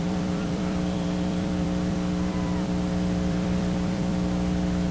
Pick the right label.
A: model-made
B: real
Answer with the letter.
A